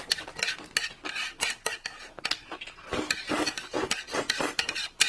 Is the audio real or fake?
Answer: real